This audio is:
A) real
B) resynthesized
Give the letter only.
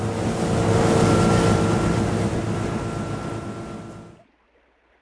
A